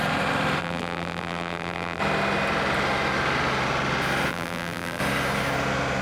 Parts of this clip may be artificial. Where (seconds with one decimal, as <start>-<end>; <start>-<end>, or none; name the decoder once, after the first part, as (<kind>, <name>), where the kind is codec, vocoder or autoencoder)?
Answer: 0.6-2.0 (vocoder, BigVGAN v2); 4.3-5.0